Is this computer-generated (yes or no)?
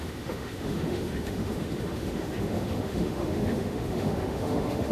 yes